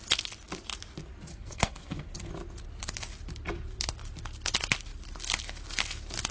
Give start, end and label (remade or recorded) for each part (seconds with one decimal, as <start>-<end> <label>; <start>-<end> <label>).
0.0-1.3 recorded; 1.3-2.3 remade; 2.3-6.3 recorded